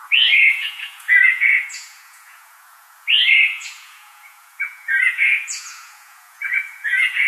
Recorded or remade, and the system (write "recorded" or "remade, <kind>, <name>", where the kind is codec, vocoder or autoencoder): remade, vocoder, Vocos